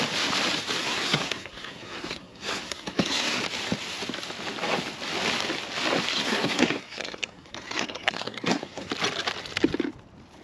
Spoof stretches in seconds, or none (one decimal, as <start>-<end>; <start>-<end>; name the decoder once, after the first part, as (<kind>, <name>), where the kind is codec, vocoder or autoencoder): 0.8-3.4 (codec, SNAC); 6.1-8.9